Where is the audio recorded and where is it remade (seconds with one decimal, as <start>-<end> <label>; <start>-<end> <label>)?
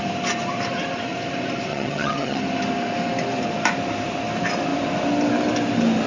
0.0-1.7 recorded; 1.7-2.4 remade; 2.4-6.1 recorded